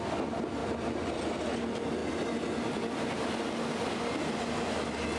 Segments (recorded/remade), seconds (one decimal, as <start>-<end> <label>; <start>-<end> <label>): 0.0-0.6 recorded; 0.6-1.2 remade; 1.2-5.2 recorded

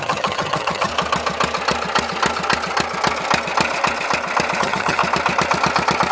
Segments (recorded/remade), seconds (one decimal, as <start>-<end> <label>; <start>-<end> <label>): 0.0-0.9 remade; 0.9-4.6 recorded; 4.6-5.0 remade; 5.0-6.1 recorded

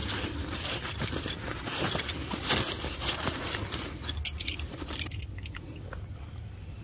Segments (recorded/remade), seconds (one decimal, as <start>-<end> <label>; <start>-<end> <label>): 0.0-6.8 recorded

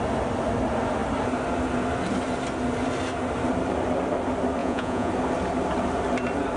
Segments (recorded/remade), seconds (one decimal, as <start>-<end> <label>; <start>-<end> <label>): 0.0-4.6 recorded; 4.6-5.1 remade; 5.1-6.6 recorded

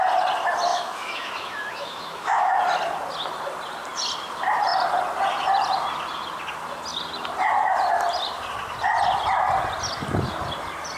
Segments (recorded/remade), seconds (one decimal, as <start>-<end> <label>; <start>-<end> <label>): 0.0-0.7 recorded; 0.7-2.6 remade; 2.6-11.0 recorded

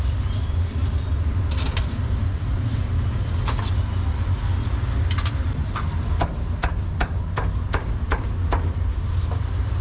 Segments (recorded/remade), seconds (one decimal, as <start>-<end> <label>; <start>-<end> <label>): 0.0-0.8 remade; 0.8-1.8 recorded; 1.8-2.8 remade; 2.8-5.2 recorded; 5.2-9.8 remade